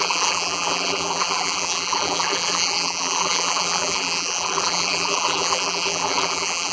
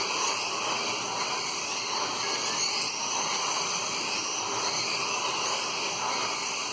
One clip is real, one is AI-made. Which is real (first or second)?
second